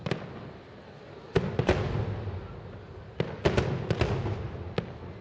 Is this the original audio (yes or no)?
yes